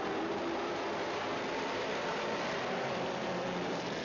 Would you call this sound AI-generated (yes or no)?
no